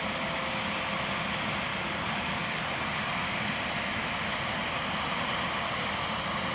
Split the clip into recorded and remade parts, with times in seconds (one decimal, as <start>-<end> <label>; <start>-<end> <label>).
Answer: 0.0-1.7 recorded; 1.7-2.6 remade; 2.6-6.5 recorded